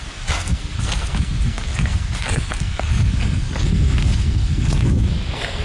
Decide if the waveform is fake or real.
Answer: fake